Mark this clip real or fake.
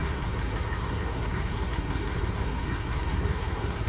fake